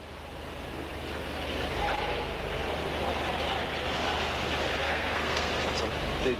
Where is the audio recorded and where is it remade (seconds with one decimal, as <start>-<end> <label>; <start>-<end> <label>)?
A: 0.0-4.8 recorded; 4.8-5.5 remade; 5.5-6.4 recorded